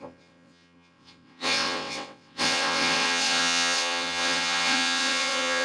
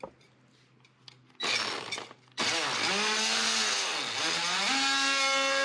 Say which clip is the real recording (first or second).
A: second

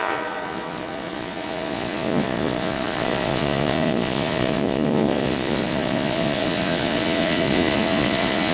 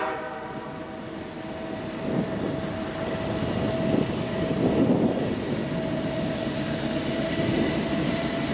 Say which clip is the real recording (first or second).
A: second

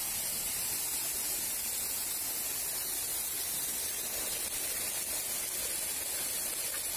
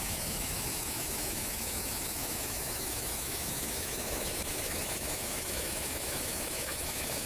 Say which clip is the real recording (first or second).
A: first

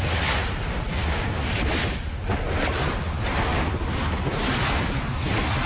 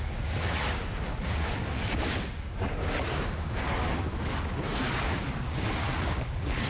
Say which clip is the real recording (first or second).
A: first